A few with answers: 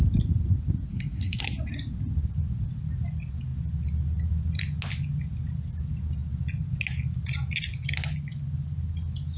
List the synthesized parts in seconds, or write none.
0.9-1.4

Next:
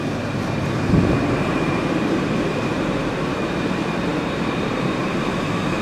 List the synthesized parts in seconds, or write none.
0.0-5.8

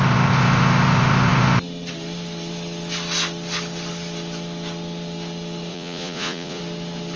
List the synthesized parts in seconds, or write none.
5.7-6.6

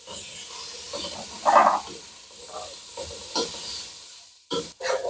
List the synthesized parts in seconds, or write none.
1.6-2.4

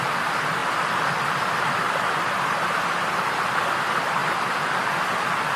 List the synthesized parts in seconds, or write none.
none

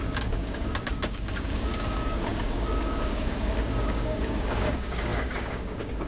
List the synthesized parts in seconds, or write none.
0.0-6.1

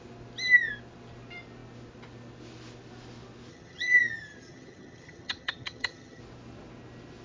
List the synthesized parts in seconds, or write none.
3.5-6.2